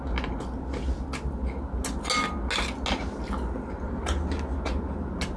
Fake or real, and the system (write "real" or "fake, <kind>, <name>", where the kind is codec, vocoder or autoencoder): real